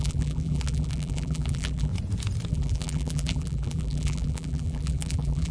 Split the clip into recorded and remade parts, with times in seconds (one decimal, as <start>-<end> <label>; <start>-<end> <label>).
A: 0.0-1.9 remade; 1.9-2.5 recorded; 2.5-5.5 remade